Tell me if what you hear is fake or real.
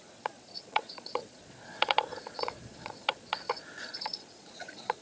fake